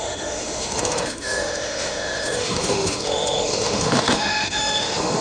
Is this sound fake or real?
fake